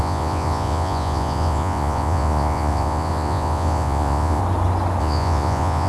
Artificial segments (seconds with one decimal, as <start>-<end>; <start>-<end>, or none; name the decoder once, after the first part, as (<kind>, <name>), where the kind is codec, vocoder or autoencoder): 0.0-4.4 (vocoder, Vocos); 5.0-5.9